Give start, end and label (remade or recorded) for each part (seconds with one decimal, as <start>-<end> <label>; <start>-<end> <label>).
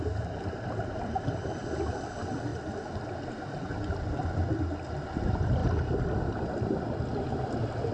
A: 0.0-7.9 recorded